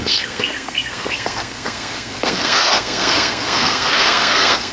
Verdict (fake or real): fake